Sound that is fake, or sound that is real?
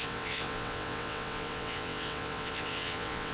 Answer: fake